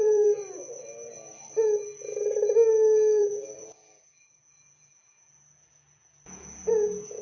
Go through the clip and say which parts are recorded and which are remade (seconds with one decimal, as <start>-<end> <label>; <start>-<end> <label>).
0.0-0.4 remade; 0.4-3.2 recorded; 3.2-7.2 remade